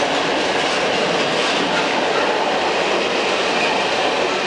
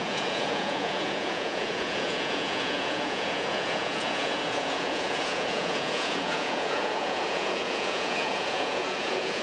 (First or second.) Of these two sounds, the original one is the first